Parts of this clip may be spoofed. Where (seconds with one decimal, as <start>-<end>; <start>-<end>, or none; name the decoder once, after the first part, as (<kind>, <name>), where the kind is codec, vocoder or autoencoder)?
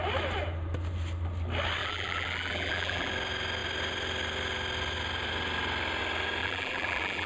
1.8-3.1 (vocoder, BigVGAN v2); 6.4-7.3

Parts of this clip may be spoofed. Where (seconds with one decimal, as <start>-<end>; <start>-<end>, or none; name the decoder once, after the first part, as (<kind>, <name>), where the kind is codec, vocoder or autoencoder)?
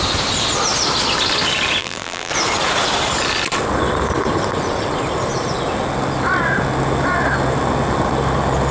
1.8-2.3 (vocoder, BigVGAN v2)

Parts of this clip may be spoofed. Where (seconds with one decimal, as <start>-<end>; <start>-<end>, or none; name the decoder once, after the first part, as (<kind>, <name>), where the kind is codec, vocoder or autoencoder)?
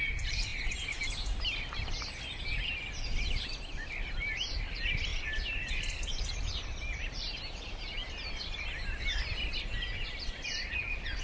0.0-0.5 (vocoder, BigVGAN v2); 2.9-5.1; 5.8-8.0; 9.6-11.2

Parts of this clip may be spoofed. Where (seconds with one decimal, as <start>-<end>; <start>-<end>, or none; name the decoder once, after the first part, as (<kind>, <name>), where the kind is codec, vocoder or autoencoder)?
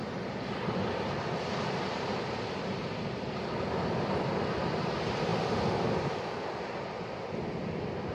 0.0-4.4 (vocoder, BigVGAN v2); 5.3-6.2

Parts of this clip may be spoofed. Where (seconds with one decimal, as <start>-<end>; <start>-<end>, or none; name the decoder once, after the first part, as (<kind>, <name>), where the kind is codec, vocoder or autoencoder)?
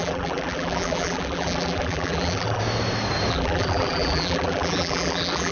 0.0-2.6 (vocoder, BigVGAN v2); 3.3-5.5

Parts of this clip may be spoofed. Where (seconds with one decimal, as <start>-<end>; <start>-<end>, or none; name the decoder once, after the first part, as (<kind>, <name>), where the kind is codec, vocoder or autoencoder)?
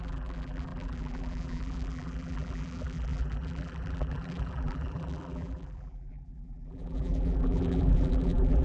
0.0-8.6 (vocoder, BigVGAN v2)